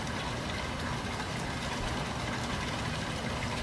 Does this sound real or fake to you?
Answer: real